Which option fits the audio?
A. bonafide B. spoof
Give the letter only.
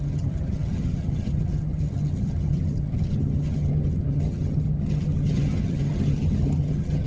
B